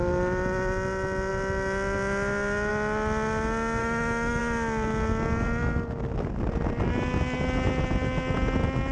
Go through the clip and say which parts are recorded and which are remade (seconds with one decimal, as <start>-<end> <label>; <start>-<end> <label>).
0.0-3.8 recorded; 3.8-4.4 remade; 4.4-8.9 recorded